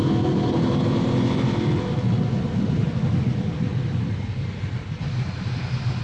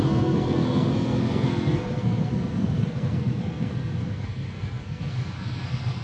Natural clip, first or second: first